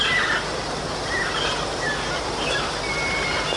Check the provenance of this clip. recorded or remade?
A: recorded